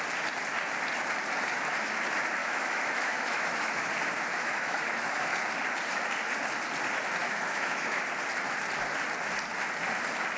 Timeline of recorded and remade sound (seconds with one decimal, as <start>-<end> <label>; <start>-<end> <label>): 0.0-2.4 recorded; 2.4-3.9 remade; 3.9-4.3 recorded; 4.3-5.3 remade; 5.3-7.2 recorded; 7.2-8.0 remade; 8.0-10.4 recorded